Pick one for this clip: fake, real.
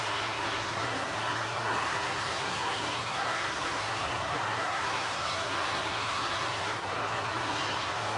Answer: fake